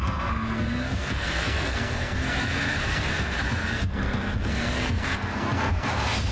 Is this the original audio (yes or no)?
no